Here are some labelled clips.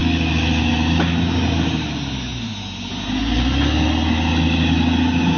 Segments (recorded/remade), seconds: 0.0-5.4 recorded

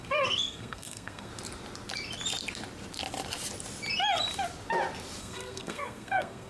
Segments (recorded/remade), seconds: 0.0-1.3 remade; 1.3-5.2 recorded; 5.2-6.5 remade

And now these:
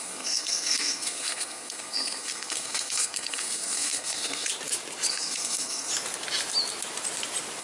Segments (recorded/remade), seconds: 0.0-4.5 remade; 4.5-5.1 recorded; 5.1-5.9 remade; 5.9-7.6 recorded

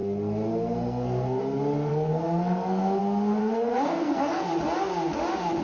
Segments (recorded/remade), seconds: 0.0-1.4 remade; 1.4-1.9 recorded; 1.9-3.0 remade; 3.0-3.4 recorded; 3.4-4.5 remade; 4.5-5.6 recorded

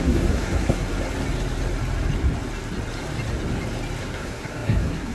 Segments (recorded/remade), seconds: 0.0-0.9 remade; 0.9-4.0 recorded; 4.0-5.1 remade

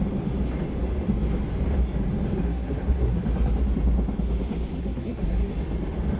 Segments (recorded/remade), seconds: 0.0-2.4 recorded; 2.4-3.2 remade; 3.2-4.8 recorded; 4.8-5.5 remade; 5.5-6.2 recorded